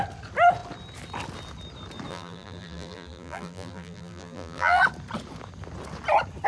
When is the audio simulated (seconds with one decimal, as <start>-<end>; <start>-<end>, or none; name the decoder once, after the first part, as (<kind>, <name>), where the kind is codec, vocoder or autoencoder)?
2.1-4.8 (vocoder, BigVGAN v2)